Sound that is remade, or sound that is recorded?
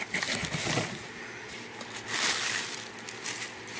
recorded